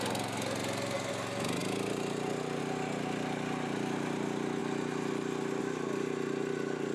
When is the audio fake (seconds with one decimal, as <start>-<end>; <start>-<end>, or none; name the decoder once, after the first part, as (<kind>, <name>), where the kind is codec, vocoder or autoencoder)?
none